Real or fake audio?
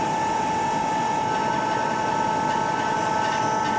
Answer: real